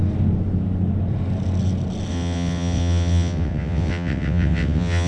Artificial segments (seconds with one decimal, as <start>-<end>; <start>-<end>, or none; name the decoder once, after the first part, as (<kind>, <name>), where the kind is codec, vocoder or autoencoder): 2.1-5.1 (vocoder, WaveNeXt)

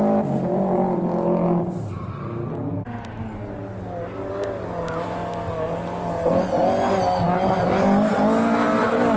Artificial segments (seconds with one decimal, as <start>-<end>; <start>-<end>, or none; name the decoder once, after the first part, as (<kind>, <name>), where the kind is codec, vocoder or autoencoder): none

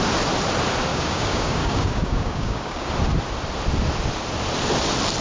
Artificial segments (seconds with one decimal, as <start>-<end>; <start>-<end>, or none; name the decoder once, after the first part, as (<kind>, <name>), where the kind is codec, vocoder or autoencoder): 0.9-2.9 (codec, DAC)

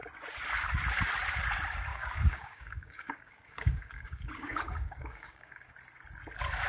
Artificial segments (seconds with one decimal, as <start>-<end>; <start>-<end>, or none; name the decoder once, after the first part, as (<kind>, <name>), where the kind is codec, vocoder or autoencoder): 1.9-5.7 (codec, DAC)

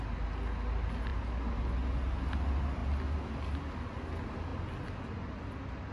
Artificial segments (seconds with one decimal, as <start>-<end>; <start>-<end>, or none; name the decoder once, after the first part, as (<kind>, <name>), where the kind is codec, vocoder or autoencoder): none